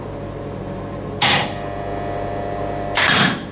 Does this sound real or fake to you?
real